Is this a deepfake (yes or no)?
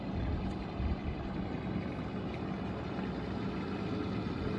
no